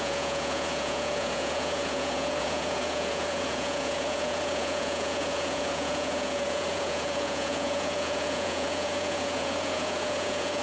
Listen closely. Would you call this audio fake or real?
fake